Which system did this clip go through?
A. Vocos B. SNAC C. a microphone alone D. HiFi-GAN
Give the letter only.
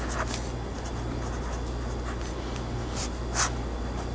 C